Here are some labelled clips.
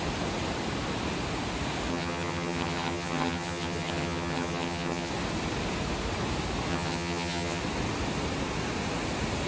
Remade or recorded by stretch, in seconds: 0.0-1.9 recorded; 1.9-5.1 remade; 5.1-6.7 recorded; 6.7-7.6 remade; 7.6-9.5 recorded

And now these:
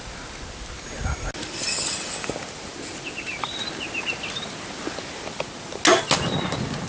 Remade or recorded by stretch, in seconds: 0.0-6.9 recorded

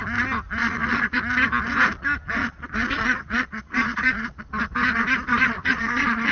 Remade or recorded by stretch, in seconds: 0.0-0.6 recorded; 0.6-1.2 remade; 1.2-2.4 recorded; 2.4-4.4 remade; 4.4-5.3 recorded; 5.3-6.3 remade

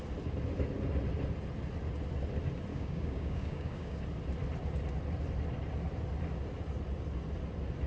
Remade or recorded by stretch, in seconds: 0.0-2.7 recorded; 2.7-4.0 remade; 4.0-7.9 recorded